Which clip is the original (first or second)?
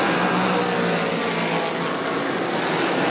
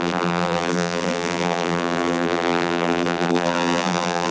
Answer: first